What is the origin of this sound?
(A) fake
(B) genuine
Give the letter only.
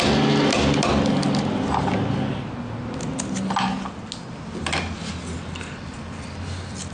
B